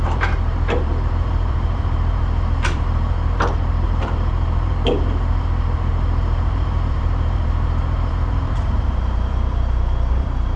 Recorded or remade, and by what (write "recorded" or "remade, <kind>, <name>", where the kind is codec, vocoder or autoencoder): remade, vocoder, BigVGAN v2